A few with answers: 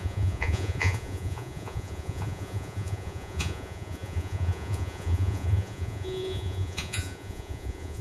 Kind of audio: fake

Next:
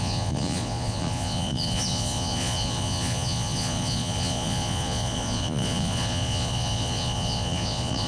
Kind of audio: fake